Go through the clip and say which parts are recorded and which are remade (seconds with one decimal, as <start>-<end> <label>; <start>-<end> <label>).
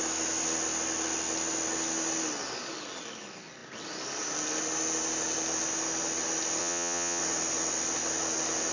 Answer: 0.0-6.6 recorded; 6.6-7.2 remade; 7.2-8.7 recorded